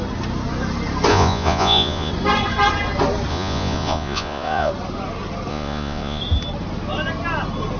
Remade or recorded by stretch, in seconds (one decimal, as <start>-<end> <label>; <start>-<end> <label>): 0.0-1.1 recorded; 1.1-2.1 remade; 2.1-3.3 recorded; 3.3-4.7 remade; 4.7-5.5 recorded; 5.5-6.2 remade; 6.2-7.8 recorded